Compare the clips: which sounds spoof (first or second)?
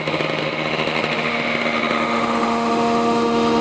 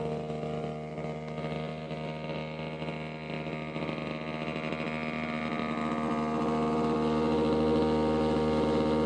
first